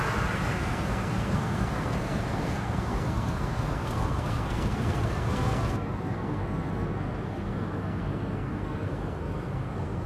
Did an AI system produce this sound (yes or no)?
yes